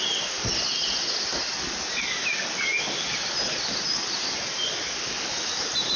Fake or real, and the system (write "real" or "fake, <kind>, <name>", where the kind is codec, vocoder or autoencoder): real